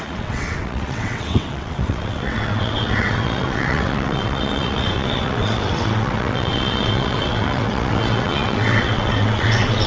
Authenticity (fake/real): fake